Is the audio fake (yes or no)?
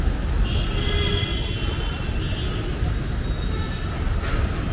no